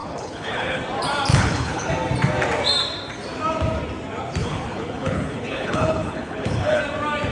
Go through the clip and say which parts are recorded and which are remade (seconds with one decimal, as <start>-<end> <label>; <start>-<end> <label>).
0.0-0.8 remade; 0.8-1.3 recorded; 1.3-1.9 remade; 1.9-4.4 recorded; 4.4-6.8 remade; 6.8-7.3 recorded